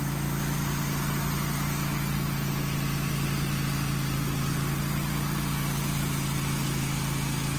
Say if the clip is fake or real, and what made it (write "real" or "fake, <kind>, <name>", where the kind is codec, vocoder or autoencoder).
real